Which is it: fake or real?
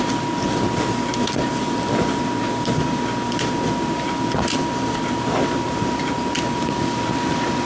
real